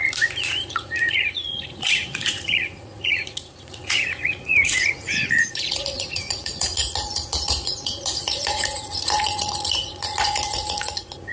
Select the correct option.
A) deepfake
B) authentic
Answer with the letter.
A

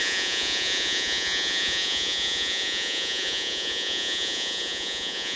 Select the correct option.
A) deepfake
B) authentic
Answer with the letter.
A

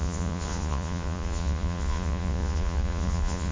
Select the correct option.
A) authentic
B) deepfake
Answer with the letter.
B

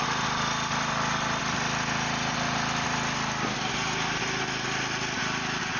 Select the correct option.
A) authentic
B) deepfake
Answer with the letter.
A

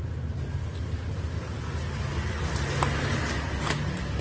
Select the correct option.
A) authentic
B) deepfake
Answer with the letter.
A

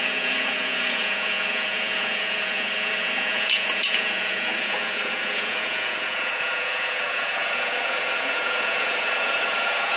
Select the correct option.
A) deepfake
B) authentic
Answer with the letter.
A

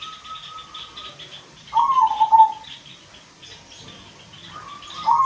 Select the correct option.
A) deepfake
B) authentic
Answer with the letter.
B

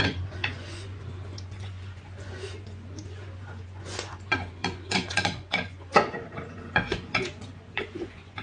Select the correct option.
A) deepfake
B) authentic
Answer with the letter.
A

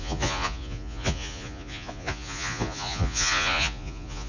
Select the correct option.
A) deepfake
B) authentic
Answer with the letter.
A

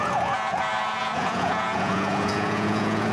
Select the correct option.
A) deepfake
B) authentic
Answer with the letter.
A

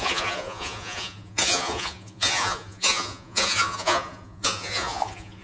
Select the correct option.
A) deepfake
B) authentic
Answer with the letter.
A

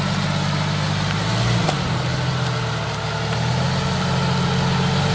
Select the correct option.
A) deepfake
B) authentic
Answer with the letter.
B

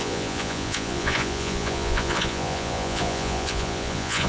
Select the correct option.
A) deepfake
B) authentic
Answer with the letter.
A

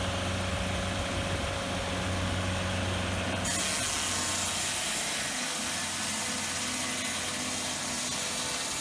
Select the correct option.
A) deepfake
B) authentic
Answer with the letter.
B